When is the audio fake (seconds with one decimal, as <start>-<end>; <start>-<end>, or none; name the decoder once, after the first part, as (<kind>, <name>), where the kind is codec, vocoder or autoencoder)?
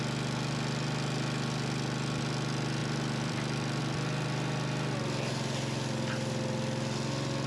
2.8-3.8 (vocoder, BigVGAN v2)